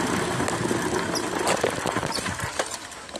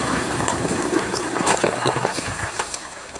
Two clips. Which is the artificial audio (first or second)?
second